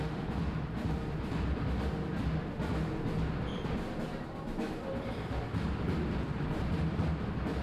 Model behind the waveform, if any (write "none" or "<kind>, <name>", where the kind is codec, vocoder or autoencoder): none